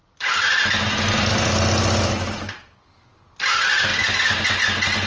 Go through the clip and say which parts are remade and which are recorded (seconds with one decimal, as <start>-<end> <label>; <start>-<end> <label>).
0.0-5.1 recorded